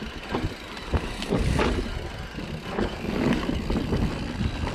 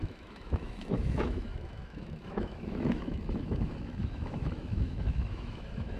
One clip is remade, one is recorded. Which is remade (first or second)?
second